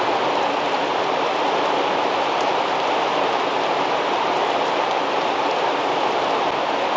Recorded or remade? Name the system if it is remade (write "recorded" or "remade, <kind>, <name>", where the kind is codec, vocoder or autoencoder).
recorded